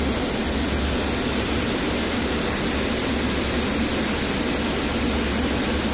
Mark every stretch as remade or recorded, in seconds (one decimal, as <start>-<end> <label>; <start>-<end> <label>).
0.0-0.4 recorded; 0.4-3.9 remade; 3.9-5.9 recorded